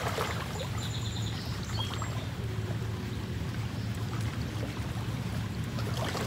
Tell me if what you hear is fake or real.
fake